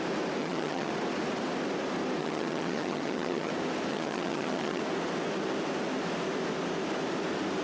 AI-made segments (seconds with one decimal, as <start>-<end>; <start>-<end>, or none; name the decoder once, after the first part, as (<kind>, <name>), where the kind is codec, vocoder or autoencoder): 0.4-0.9 (vocoder, HiFi-GAN); 2.2-3.5; 3.9-4.8

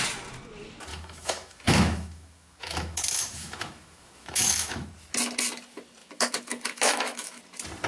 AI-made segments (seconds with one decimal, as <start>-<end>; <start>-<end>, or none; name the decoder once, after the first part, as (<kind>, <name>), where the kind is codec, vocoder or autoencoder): 0.9-4.9 (autoencoder, DAC-VAE); 6.0-7.4

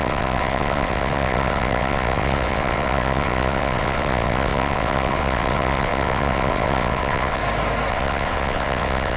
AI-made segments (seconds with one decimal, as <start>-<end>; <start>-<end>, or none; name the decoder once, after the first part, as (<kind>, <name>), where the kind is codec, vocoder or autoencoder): 0.0-7.4 (vocoder, WaveNeXt); 7.9-9.2

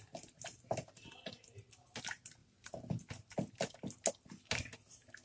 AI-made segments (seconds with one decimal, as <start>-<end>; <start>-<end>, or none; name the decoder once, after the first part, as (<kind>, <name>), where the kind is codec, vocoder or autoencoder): none

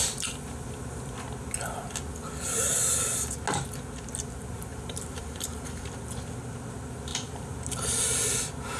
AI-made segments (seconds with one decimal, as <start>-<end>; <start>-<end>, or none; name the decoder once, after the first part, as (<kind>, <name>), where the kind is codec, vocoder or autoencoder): 4.7-5.8 (vocoder, BigVGAN v2); 7.1-8.0